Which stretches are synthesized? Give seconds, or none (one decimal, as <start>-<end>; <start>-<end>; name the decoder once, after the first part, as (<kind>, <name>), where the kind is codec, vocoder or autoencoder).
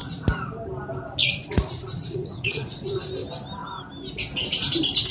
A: 1.2-3.1 (vocoder, Vocos)